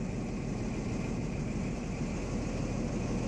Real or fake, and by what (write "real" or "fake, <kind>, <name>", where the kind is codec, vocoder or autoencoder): real